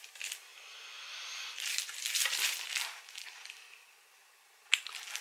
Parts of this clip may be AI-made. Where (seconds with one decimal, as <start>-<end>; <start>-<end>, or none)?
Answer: 0.5-2.9